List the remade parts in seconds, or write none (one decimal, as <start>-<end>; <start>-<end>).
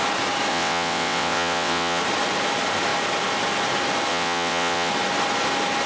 0.5-2.0; 4.1-4.9